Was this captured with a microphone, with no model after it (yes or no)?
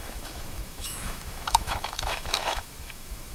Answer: no